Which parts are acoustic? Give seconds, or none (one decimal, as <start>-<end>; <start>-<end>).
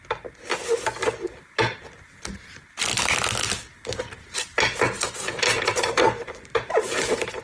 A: 0.0-5.7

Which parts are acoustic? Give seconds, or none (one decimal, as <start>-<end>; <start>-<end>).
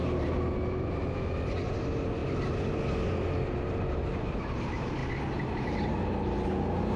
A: 0.0-7.0